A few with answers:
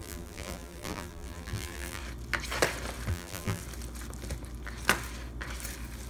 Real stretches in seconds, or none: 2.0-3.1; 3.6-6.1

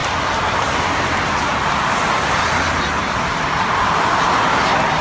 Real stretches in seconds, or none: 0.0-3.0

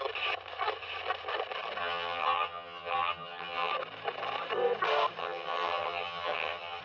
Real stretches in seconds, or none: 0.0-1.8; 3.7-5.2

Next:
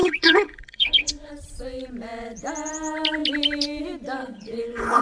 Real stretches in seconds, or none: 1.3-4.2